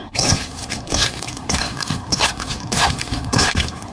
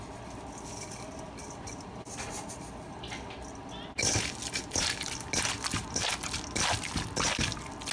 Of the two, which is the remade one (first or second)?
first